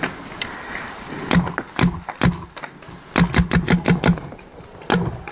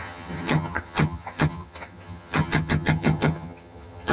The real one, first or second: first